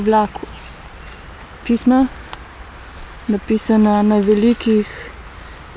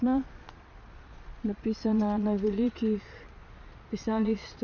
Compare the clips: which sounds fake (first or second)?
second